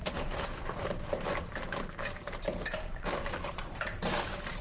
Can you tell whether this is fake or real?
fake